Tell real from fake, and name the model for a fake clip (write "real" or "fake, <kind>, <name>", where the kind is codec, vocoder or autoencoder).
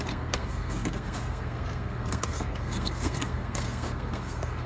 fake, codec, SNAC